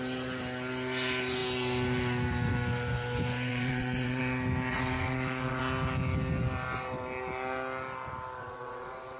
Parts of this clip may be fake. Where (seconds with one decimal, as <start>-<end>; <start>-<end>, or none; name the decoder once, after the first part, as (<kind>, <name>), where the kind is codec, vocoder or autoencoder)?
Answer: 3.5-4.2 (vocoder, WaveNeXt); 4.7-5.6; 8.4-9.2